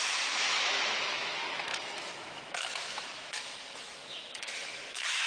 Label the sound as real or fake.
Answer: fake